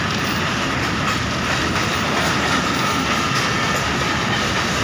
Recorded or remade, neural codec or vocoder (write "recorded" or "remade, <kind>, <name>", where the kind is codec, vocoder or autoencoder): recorded